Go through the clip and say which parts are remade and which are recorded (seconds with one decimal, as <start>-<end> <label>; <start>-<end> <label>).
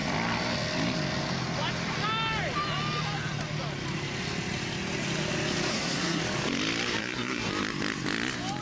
0.0-5.7 recorded; 5.7-6.2 remade; 6.2-7.0 recorded; 7.0-7.5 remade; 7.5-8.6 recorded